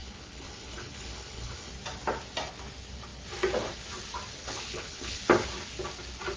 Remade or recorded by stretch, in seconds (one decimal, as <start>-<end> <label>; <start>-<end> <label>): 0.0-1.7 remade; 1.7-4.4 recorded; 4.4-5.2 remade; 5.2-6.4 recorded